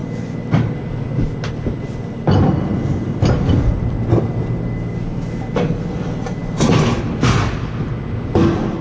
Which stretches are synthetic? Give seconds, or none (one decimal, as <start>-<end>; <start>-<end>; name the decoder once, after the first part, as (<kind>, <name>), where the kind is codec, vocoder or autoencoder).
none